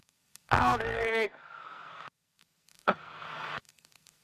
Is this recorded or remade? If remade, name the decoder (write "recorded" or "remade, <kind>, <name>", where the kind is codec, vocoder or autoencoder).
remade, codec, SNAC